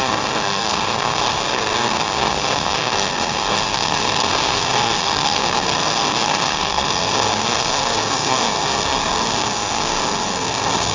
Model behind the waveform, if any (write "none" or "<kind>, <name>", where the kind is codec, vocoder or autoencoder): codec, SNAC